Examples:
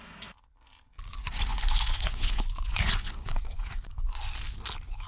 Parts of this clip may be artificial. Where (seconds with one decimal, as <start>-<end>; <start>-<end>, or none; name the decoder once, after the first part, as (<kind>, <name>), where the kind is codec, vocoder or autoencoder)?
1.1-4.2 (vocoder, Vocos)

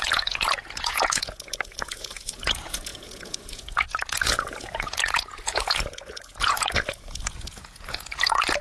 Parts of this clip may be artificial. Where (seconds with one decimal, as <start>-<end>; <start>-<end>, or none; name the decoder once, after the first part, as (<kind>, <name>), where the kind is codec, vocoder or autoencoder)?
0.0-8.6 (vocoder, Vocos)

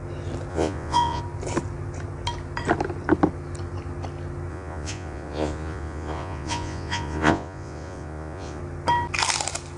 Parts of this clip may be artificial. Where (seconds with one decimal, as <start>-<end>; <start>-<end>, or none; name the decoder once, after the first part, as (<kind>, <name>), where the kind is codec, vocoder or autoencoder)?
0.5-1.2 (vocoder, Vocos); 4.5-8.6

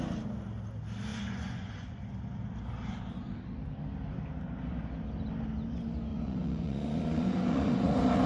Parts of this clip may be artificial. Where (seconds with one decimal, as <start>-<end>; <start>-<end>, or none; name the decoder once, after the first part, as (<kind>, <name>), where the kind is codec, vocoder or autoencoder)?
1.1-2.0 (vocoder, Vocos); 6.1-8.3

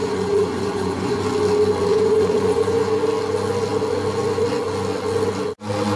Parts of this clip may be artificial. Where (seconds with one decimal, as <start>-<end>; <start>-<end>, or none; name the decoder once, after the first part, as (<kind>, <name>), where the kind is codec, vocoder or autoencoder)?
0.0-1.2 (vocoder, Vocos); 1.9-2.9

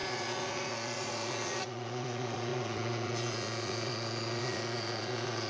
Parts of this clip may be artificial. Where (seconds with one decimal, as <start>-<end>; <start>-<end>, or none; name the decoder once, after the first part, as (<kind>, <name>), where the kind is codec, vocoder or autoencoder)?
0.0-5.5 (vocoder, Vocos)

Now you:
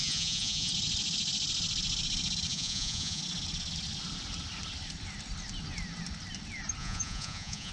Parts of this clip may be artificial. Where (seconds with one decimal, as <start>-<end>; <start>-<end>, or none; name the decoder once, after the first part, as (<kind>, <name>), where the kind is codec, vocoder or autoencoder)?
0.0-0.7 (vocoder, Vocos); 2.5-3.2; 6.8-7.7